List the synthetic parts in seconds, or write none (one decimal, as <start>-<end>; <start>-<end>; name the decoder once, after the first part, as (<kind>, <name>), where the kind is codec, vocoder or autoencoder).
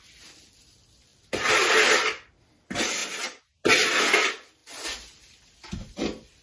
1.1-1.7 (vocoder, BigVGAN v2); 4.6-5.2